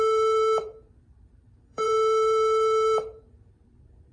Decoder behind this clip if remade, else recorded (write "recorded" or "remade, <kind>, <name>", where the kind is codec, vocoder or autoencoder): remade, vocoder, BigVGAN v2